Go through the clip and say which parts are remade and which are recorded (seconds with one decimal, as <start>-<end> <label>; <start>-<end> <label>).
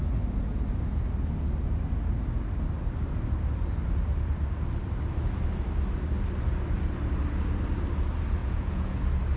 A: 0.0-8.4 recorded; 8.4-9.0 remade; 9.0-9.4 recorded